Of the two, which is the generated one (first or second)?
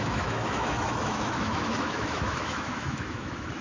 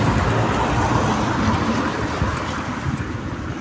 first